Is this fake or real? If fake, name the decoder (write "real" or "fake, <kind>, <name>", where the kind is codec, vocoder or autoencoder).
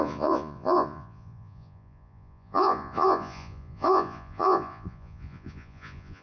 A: fake, vocoder, Vocos